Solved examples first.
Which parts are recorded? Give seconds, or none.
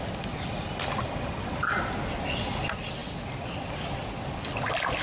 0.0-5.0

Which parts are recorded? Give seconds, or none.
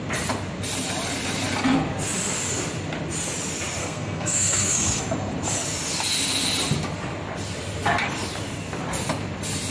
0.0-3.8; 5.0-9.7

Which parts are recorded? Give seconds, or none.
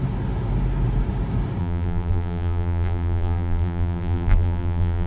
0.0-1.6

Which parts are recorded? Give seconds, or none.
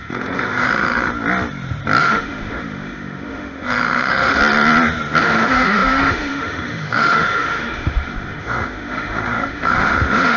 1.1-2.0; 4.4-5.2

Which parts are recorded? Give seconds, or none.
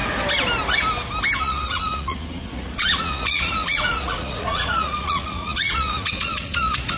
0.0-1.4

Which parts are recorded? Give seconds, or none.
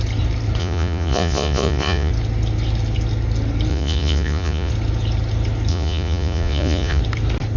0.0-0.6; 2.1-3.7; 4.7-5.7; 7.0-7.6